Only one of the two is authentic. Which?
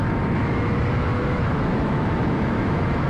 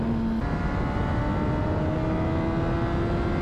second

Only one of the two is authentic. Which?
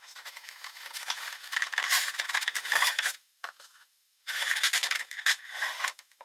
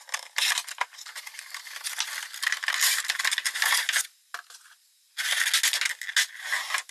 second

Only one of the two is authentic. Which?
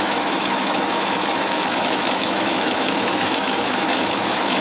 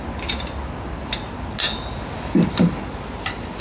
second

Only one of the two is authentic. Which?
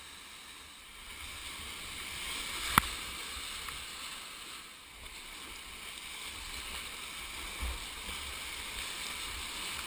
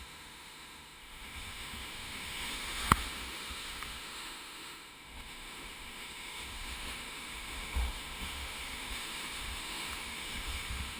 first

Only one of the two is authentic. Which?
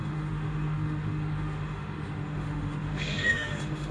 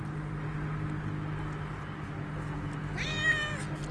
second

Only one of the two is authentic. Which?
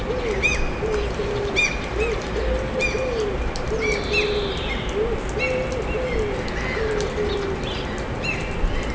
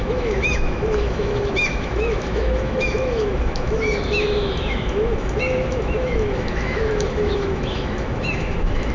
first